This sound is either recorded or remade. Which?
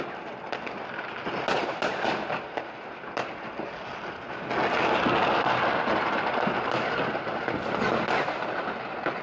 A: recorded